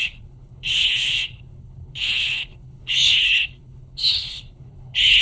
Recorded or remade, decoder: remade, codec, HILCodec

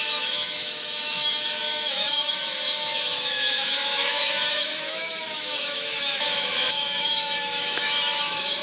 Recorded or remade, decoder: remade, autoencoder, DAC-VAE